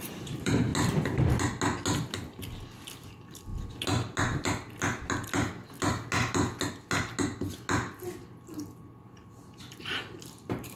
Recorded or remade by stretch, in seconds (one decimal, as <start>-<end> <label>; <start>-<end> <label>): 0.0-0.7 remade; 0.7-3.1 recorded; 3.1-3.5 remade; 3.5-8.6 recorded; 8.6-10.8 remade